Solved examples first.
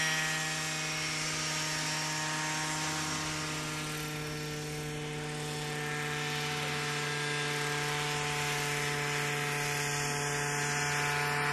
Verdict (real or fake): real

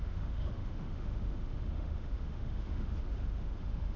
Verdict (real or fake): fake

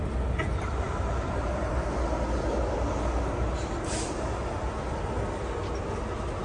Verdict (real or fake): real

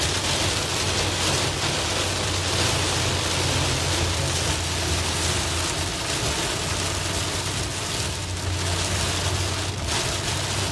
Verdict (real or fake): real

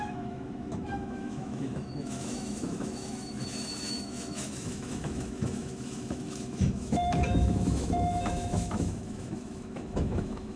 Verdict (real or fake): fake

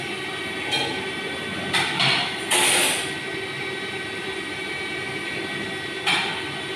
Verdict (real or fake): real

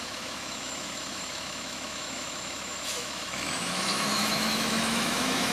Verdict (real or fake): fake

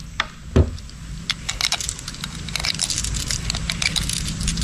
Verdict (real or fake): real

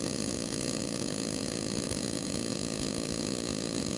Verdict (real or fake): fake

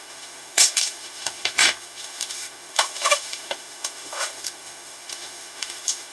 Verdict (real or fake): fake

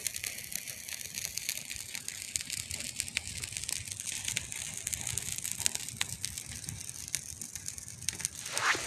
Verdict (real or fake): real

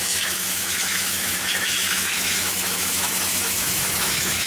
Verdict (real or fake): fake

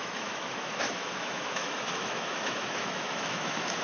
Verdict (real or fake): fake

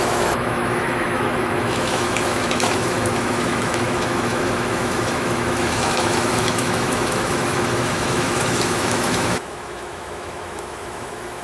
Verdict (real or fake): fake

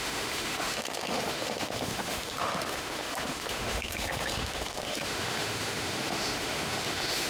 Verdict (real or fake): fake